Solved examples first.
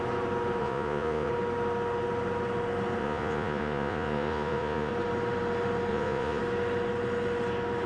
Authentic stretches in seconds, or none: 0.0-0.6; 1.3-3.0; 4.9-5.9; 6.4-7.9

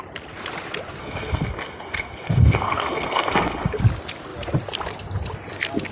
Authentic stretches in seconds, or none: 0.0-1.0; 3.8-5.9